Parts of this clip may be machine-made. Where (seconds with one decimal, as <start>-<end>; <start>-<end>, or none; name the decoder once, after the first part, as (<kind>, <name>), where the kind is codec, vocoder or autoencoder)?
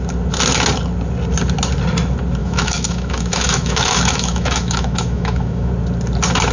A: 2.4-5.7 (autoencoder, DAC-VAE)